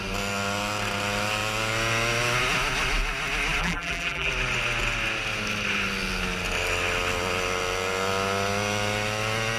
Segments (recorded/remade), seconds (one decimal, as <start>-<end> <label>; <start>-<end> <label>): 0.0-3.6 recorded; 3.6-4.3 remade; 4.3-9.6 recorded

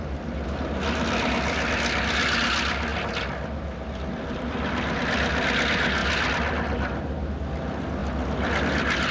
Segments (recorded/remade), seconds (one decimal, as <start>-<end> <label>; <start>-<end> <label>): 0.0-9.1 recorded

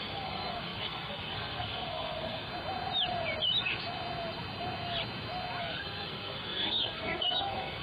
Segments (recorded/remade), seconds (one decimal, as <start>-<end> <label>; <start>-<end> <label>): 0.0-2.5 remade; 2.5-5.6 recorded; 5.6-7.8 remade